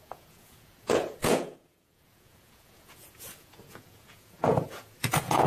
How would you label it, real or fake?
fake